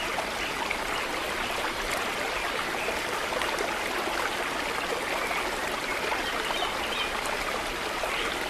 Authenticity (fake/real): real